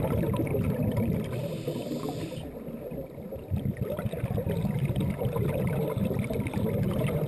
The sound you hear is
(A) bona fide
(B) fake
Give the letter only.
A